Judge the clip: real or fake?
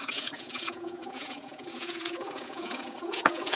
fake